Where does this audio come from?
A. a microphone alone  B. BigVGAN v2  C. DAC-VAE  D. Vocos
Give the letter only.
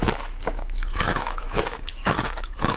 C